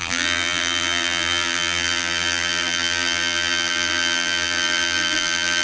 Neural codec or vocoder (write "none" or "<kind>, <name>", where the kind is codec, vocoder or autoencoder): vocoder, BigVGAN v2